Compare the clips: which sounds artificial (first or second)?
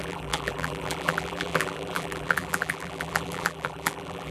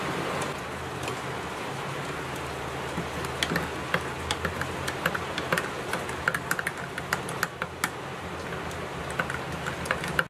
first